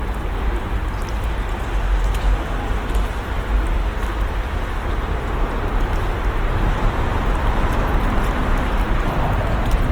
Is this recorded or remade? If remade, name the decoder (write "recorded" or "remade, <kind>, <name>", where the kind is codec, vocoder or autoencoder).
recorded